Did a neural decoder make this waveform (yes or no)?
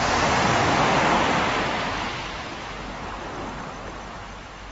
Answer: no